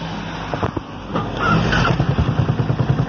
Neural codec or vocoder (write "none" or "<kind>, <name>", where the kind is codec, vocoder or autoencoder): none